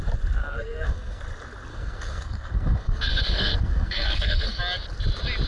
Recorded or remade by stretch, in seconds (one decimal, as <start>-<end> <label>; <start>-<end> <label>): 0.0-0.4 recorded; 0.4-1.2 remade; 1.2-1.7 recorded; 1.7-4.6 remade; 4.6-5.5 recorded